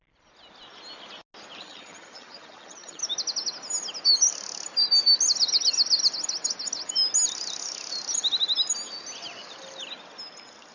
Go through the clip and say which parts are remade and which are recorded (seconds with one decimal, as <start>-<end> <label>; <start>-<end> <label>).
0.0-1.6 recorded; 1.6-3.0 remade; 3.0-10.7 recorded